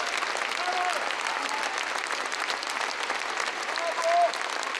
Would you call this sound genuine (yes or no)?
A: yes